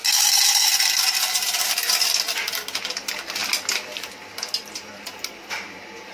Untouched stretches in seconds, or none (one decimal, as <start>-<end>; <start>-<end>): 0.0-6.1